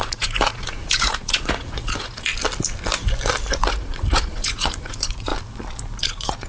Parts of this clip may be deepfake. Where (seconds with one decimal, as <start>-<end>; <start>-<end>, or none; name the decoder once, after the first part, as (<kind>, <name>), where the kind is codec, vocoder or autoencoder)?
0.0-2.3 (vocoder, Vocos); 3.5-5.3; 6.0-6.5